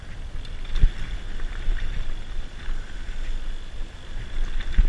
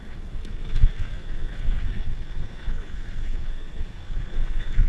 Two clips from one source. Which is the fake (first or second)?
second